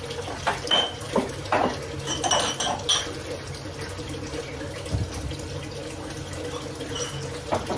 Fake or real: real